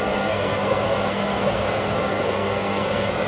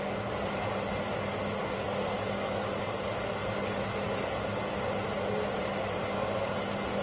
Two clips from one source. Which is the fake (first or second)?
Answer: first